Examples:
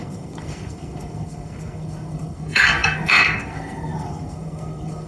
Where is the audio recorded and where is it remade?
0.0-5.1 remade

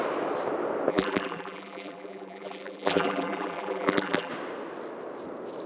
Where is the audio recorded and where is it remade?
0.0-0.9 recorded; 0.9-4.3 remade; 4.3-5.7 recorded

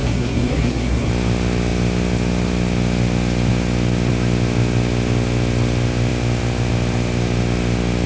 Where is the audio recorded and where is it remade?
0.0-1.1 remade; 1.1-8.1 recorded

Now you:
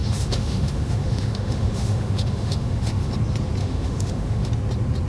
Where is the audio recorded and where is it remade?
0.0-3.1 remade; 3.1-3.6 recorded; 3.6-4.5 remade; 4.5-5.1 recorded

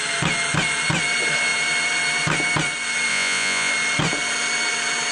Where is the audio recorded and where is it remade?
0.0-3.1 recorded; 3.1-3.7 remade; 3.7-5.1 recorded